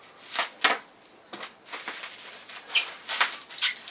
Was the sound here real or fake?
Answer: real